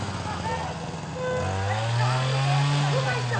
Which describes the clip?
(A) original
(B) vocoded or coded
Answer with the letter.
A